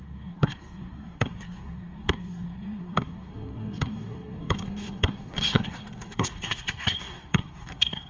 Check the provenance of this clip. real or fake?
fake